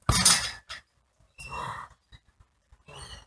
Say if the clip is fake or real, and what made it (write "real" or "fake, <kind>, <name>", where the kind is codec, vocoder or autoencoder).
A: real